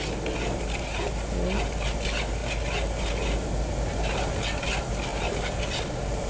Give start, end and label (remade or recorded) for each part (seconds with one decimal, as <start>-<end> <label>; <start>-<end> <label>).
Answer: 0.0-6.3 recorded